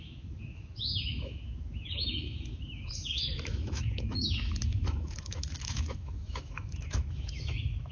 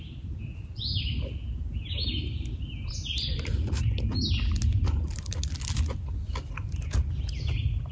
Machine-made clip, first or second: first